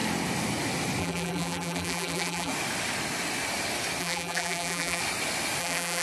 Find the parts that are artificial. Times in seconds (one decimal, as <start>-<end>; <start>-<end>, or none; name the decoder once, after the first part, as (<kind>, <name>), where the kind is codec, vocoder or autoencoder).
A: 1.0-2.5 (vocoder, BigVGAN v2); 4.0-5.0; 5.6-6.0